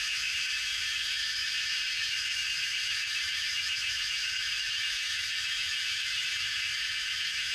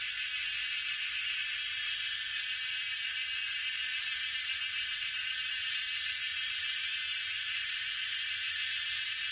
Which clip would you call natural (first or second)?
second